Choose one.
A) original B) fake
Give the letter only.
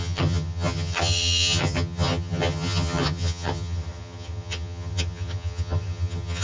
B